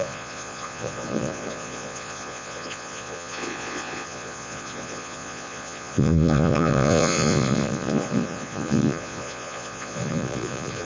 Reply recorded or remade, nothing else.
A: remade